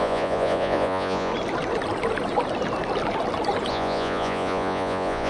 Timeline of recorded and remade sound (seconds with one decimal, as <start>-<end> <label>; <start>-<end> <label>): 0.0-1.3 remade; 1.3-3.7 recorded; 3.7-5.3 remade